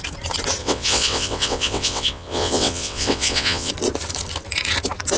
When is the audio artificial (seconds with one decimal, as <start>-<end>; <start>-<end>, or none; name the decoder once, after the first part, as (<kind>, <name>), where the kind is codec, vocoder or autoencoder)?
0.6-3.7 (vocoder, WaveNeXt)

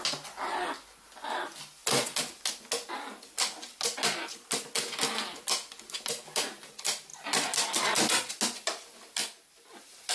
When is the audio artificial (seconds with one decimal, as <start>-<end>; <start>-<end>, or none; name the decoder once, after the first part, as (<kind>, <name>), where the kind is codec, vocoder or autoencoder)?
none

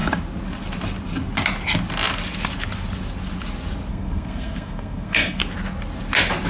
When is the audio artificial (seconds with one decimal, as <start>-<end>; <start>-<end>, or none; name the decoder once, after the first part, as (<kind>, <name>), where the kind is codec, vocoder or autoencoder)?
3.9-5.4 (codec, SNAC)

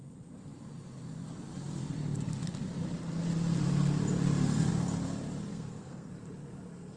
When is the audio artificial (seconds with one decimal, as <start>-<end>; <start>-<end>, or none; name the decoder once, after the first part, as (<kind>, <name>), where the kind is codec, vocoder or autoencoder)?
5.5-6.1 (codec, SNAC)